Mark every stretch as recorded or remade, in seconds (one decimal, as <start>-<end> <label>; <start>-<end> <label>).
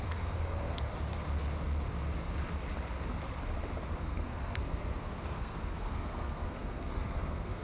0.0-0.9 remade; 0.9-4.0 recorded; 4.0-7.6 remade